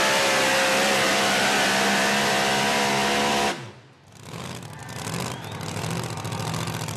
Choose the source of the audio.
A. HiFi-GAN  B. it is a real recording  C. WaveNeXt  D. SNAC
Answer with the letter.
B